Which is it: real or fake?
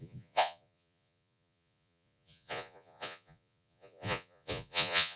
fake